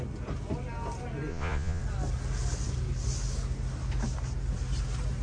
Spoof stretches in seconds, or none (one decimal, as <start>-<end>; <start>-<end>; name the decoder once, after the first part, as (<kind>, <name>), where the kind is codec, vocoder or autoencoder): 1.3-1.8 (vocoder, Vocos)